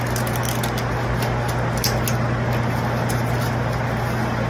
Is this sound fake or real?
real